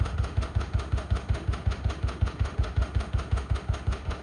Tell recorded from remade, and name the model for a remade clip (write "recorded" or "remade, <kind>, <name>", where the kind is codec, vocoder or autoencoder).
remade, autoencoder, DAC-VAE